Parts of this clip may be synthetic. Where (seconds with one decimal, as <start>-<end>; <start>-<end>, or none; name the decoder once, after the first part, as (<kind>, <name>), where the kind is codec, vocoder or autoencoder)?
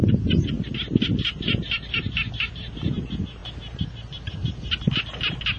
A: none